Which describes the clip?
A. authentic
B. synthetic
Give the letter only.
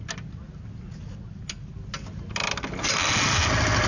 A